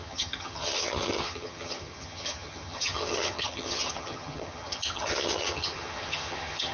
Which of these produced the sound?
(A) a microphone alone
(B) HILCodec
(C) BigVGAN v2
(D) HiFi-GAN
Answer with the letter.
D